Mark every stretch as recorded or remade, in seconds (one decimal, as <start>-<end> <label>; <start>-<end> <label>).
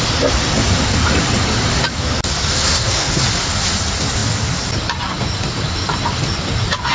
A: 0.0-2.5 recorded; 2.5-3.2 remade; 3.2-6.9 recorded